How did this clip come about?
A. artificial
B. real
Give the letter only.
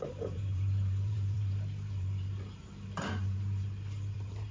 A